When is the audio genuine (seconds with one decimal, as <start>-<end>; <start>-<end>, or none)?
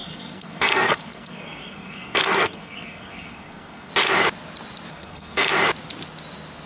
3.9-4.9; 5.5-6.7